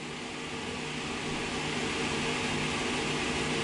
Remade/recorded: recorded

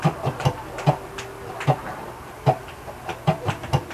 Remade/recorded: recorded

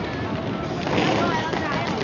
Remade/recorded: recorded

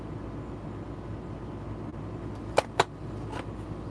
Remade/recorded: recorded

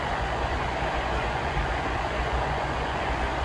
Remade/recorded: remade